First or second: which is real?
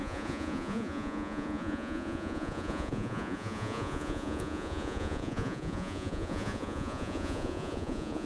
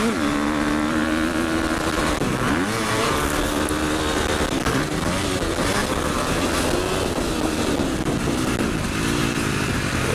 second